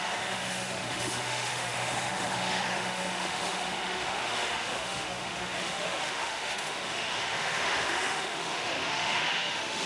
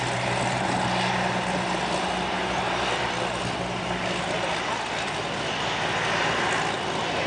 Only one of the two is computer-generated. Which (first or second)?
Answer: first